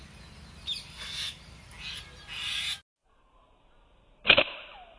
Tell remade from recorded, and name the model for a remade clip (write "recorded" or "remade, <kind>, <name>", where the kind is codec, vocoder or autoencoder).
recorded